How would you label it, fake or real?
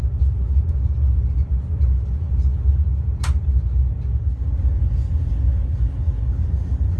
real